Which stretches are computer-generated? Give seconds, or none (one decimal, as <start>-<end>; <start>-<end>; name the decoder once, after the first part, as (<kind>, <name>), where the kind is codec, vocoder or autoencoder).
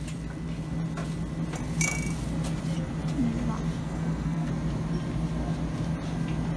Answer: 3.8-4.5 (codec, SNAC)